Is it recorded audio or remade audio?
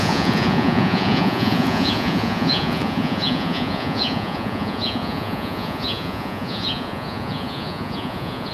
remade